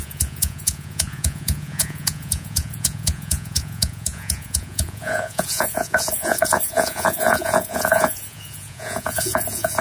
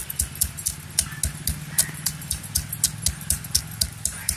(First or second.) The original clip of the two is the second